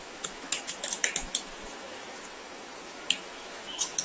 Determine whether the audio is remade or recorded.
remade